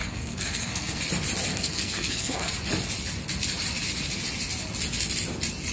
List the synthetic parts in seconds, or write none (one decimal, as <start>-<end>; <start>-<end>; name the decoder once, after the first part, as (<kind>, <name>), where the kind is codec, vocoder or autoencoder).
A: 0.0-1.0 (codec, SNAC); 1.5-2.5